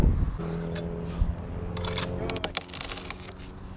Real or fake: real